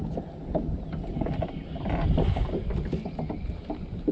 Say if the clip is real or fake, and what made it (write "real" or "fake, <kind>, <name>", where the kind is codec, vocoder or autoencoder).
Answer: real